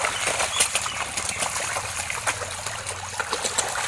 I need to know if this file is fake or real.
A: real